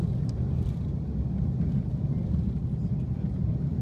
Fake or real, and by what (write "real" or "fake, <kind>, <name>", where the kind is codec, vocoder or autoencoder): real